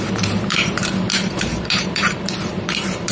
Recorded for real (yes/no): no